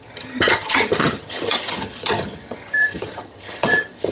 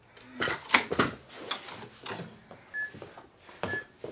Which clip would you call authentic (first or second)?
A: second